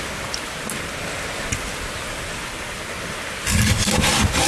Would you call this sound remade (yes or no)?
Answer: no